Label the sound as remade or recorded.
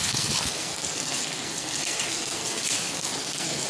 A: remade